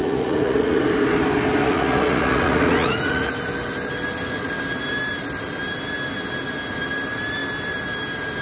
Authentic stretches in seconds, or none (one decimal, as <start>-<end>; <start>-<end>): 0.8-1.6; 3.3-8.4